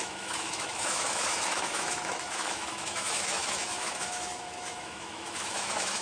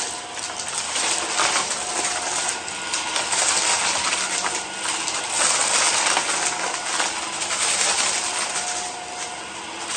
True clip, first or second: second